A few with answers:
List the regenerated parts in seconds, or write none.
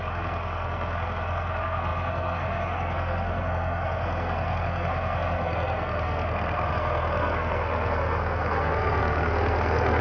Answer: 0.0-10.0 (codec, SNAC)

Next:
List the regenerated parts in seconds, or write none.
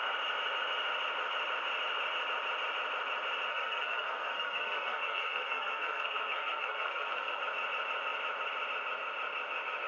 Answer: 3.5-7.4 (codec, SNAC)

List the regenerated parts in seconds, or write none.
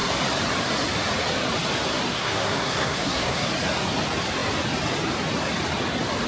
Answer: 2.1-3.5 (codec, SNAC)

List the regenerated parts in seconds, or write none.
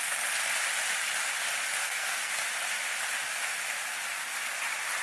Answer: 1.8-2.3 (codec, SNAC)